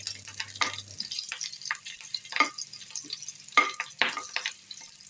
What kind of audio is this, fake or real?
real